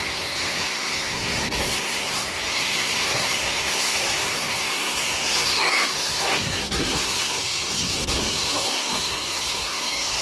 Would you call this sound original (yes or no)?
no